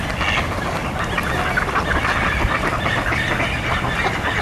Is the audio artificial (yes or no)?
no